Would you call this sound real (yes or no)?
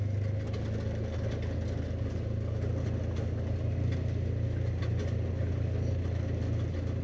yes